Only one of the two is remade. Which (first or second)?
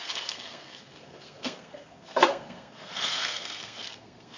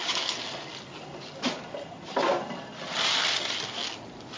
first